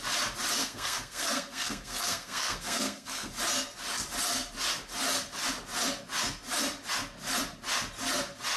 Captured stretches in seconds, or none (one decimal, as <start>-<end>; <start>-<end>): 0.0-0.6; 3.3-8.6